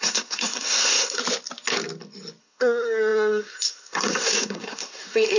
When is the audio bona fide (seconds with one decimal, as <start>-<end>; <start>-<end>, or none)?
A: 1.2-2.4